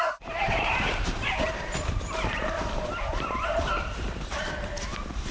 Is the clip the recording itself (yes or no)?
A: no